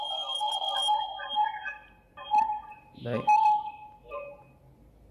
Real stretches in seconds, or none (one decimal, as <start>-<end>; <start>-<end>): 0.0-5.1